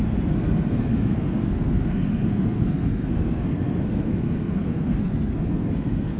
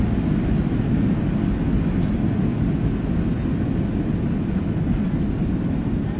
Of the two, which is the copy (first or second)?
first